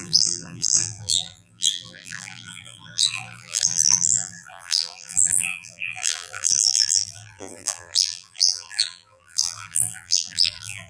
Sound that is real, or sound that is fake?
fake